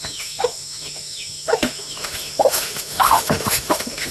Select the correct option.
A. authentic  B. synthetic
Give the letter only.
B